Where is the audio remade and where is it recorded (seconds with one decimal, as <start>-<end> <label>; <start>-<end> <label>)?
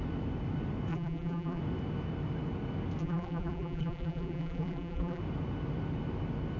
0.0-0.9 recorded; 0.9-1.6 remade; 1.6-3.0 recorded; 3.0-5.2 remade; 5.2-6.6 recorded